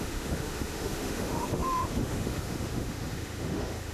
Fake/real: fake